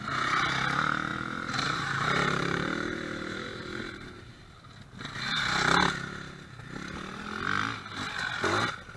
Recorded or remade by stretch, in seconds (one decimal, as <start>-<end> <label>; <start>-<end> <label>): 0.0-1.1 recorded; 1.1-4.4 remade; 4.4-9.0 recorded